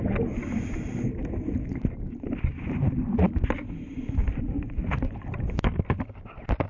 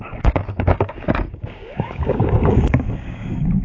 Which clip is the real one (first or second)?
first